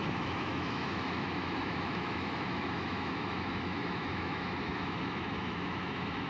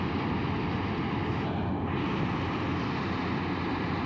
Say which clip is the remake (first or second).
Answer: first